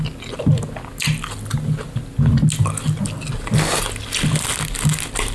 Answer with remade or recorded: recorded